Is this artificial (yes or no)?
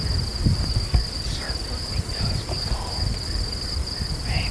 no